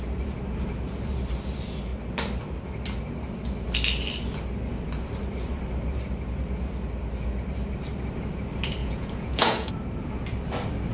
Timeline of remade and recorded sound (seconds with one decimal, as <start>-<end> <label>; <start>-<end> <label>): 0.0-8.8 recorded; 8.8-9.7 remade; 9.7-10.9 recorded